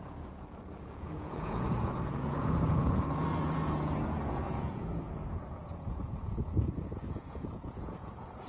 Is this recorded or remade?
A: remade